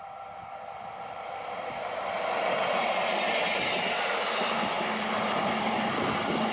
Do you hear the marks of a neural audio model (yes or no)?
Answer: no